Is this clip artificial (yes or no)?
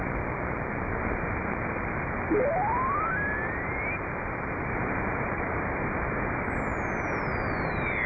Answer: no